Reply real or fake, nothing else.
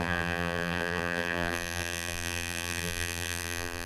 fake